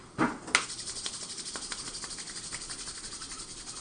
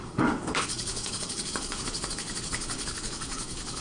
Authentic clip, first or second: first